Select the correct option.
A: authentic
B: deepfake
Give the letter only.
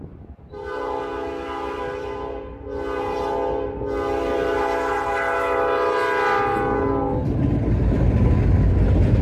A